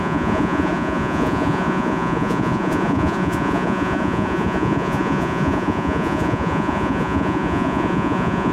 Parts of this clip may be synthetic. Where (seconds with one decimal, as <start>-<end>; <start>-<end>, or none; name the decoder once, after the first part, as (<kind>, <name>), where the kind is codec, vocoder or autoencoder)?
0.0-8.5 (vocoder, Vocos)